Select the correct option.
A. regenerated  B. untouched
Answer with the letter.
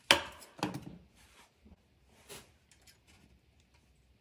B